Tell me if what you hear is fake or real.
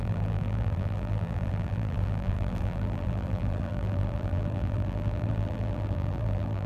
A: fake